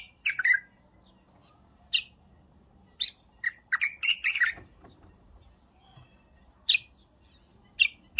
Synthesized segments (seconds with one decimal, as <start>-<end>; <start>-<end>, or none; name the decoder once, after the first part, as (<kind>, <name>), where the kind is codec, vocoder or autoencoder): none